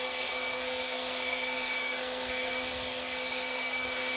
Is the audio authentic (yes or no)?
no